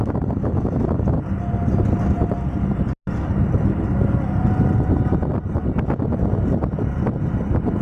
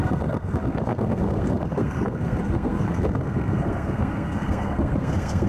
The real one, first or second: first